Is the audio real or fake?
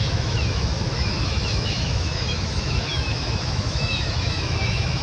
fake